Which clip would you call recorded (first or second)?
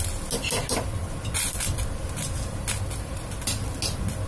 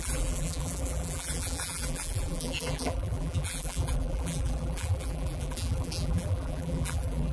first